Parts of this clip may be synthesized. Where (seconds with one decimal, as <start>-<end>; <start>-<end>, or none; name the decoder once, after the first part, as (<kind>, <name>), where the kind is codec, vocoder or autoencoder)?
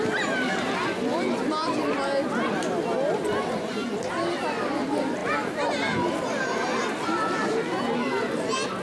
none